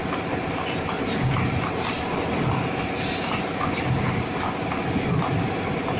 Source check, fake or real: real